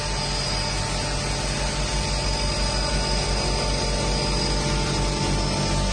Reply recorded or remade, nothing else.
recorded